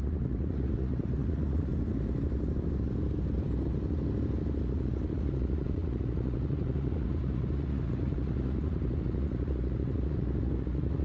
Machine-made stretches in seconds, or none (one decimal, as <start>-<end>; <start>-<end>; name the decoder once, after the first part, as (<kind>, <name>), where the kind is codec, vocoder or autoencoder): 0.0-1.7 (vocoder, Vocos); 4.6-11.0